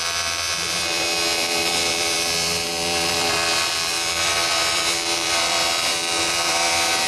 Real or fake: fake